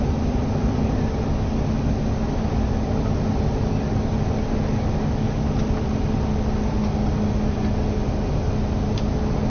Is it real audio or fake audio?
real